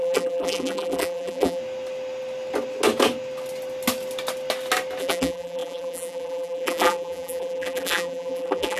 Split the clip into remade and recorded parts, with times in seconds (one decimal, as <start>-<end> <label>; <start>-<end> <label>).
0.0-1.6 remade; 1.6-5.0 recorded; 5.0-8.8 remade